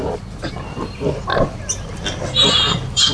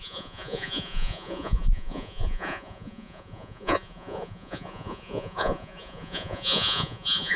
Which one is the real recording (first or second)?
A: first